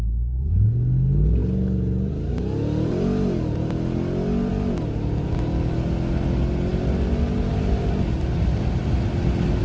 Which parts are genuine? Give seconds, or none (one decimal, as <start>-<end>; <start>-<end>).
0.0-9.6